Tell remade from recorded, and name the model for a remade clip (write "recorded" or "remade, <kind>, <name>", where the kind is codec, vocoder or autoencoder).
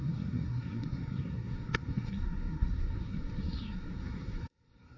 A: remade, codec, SNAC